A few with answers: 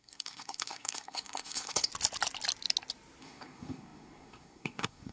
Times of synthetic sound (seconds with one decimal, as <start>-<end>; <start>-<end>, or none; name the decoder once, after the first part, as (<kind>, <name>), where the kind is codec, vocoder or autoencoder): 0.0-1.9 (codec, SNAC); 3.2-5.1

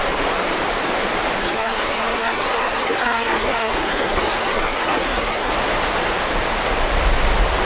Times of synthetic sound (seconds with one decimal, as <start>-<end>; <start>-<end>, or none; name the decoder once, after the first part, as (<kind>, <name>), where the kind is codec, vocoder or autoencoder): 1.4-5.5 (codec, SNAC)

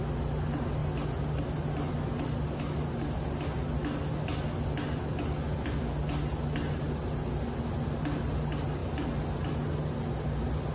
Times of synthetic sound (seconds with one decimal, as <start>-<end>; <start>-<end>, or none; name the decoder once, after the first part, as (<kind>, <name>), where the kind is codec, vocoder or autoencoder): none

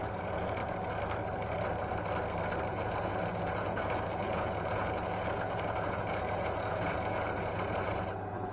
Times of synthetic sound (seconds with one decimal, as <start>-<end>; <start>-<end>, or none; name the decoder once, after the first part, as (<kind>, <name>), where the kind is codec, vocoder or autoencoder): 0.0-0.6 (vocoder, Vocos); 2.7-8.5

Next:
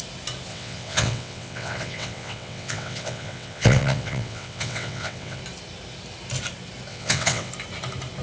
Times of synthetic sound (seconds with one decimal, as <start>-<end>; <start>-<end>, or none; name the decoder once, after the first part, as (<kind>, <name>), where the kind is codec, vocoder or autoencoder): 0.5-5.4 (vocoder, WaveNeXt); 6.9-7.5

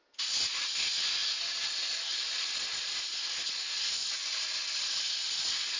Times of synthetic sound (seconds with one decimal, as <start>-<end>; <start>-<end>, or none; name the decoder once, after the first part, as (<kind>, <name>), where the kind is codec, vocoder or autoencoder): none

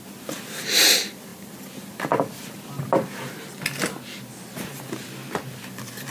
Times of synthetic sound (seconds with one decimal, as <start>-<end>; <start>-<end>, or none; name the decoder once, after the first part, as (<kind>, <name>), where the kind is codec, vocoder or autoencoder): none